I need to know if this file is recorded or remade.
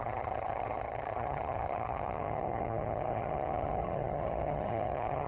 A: remade